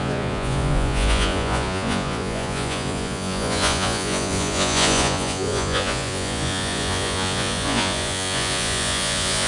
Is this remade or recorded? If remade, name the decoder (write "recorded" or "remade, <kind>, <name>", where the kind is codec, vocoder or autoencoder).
remade, vocoder, Vocos